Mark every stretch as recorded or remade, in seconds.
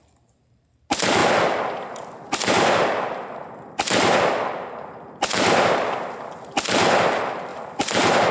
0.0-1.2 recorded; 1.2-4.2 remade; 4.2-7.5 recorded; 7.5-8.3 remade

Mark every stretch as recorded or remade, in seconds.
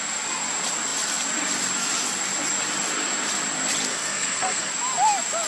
0.0-3.9 recorded; 3.9-4.7 remade; 4.7-5.5 recorded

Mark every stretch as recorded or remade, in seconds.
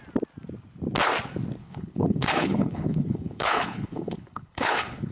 0.0-1.6 recorded; 1.6-5.1 remade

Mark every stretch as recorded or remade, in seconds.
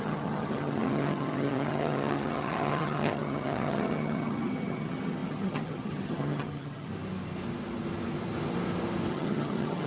0.0-6.9 remade; 6.9-9.1 recorded; 9.1-9.9 remade